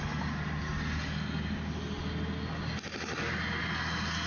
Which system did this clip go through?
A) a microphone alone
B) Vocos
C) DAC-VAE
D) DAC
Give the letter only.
A